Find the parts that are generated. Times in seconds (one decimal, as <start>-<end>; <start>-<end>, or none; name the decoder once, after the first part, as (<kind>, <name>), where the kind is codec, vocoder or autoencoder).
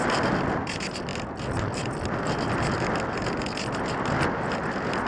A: none